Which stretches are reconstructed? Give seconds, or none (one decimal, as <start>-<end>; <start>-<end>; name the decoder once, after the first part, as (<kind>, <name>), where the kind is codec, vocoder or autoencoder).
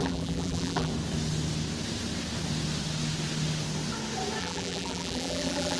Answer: 0.0-0.9 (vocoder, BigVGAN v2); 4.4-5.8